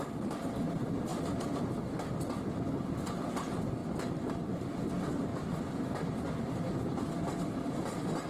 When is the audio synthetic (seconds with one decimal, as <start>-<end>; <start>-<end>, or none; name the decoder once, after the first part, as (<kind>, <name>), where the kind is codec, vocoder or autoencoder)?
3.8-4.3 (vocoder, BigVGAN v2); 5.3-6.9